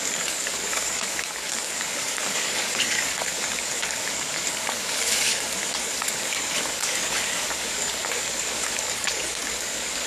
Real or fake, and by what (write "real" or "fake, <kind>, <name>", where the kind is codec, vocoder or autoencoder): fake, codec, DAC